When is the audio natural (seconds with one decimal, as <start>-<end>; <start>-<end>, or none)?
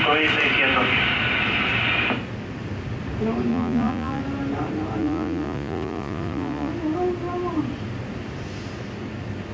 0.0-3.5; 4.2-5.0; 6.7-9.5